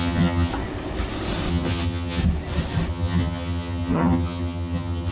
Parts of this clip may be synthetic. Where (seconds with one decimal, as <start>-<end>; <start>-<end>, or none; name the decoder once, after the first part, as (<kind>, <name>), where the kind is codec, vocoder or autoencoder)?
0.0-0.5 (vocoder, HiFi-GAN); 1.5-2.2; 2.9-5.1

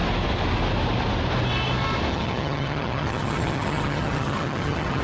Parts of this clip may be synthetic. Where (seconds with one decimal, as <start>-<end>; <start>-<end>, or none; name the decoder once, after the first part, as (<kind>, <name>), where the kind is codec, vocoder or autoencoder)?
2.1-5.0 (vocoder, HiFi-GAN)

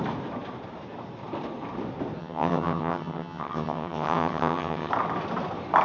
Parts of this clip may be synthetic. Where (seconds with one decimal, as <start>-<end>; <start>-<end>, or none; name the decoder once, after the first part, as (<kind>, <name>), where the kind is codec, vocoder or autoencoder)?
2.2-4.9 (vocoder, HiFi-GAN)